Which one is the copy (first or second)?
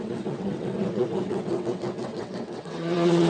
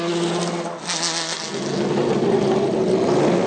first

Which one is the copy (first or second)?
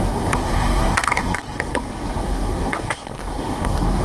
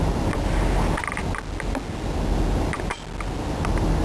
first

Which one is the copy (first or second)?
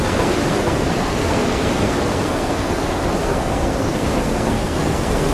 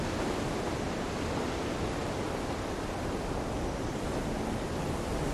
first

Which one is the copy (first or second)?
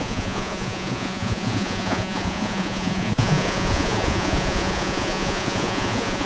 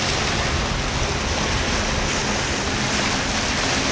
first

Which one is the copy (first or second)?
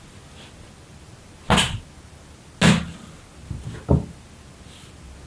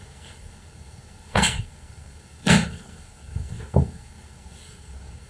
second